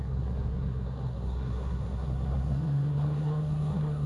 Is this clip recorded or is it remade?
remade